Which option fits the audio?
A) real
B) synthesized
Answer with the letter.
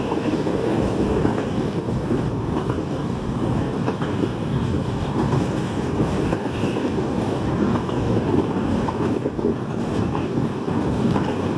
B